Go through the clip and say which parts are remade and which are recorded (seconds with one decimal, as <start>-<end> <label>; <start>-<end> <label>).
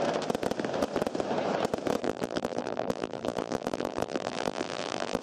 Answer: 0.0-2.0 recorded; 2.0-5.2 remade